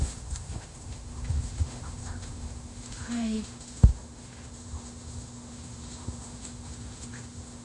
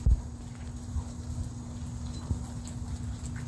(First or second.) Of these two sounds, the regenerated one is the first